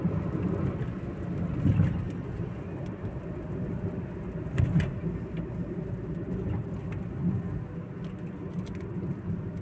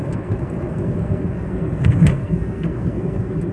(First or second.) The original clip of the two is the first